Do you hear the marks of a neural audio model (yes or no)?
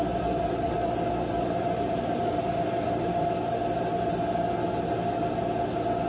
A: no